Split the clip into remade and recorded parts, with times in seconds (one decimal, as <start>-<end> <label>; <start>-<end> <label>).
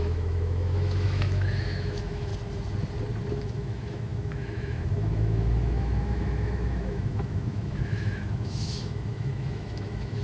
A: 0.0-2.3 remade; 2.3-3.3 recorded; 3.3-10.2 remade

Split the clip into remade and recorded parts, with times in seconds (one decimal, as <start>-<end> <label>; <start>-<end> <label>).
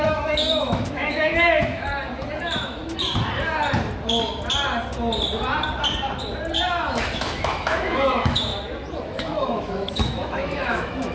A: 0.0-1.9 remade; 1.9-2.4 recorded; 2.4-2.8 remade; 2.8-6.7 recorded; 6.7-8.5 remade; 8.5-9.0 recorded; 9.0-11.1 remade